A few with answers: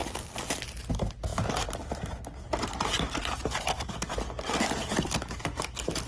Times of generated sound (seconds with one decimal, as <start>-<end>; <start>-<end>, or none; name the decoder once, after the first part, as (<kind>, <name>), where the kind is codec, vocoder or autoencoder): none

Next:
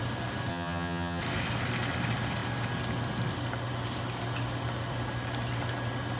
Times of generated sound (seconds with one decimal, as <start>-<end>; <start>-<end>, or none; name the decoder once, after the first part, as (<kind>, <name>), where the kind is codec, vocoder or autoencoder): 0.5-1.2 (vocoder, HiFi-GAN)

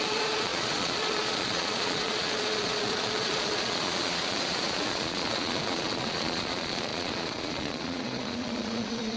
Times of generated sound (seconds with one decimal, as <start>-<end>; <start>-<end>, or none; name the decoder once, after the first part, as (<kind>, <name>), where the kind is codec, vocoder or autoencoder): 0.0-9.2 (vocoder, Vocos)

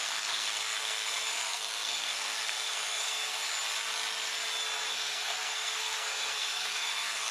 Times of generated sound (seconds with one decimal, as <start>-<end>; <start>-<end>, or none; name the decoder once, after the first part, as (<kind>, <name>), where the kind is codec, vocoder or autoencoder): 0.0-3.5 (codec, SNAC); 4.9-7.3